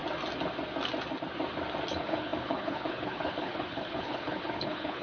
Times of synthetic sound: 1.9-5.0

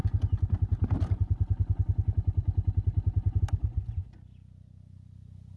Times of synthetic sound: none

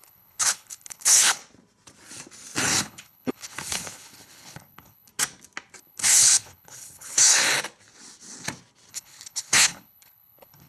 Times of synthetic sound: 0.0-1.4; 2.8-5.1; 5.8-7.4; 8.9-10.7

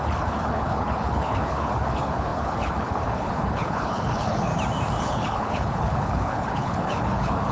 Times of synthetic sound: 0.0-4.5; 5.0-7.5

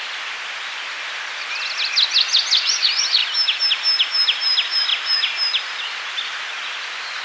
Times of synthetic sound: none

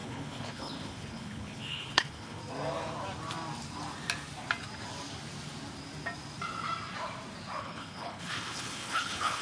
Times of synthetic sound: 0.0-2.4; 7.6-9.4

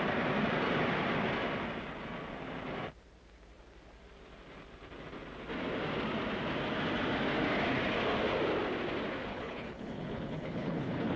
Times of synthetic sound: 9.3-11.2